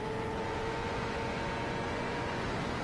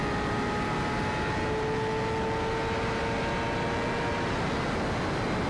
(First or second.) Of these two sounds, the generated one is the first